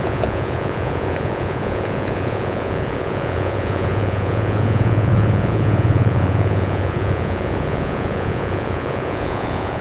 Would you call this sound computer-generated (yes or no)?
yes